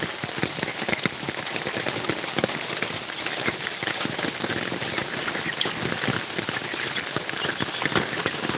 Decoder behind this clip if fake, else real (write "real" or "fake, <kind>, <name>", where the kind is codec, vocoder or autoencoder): real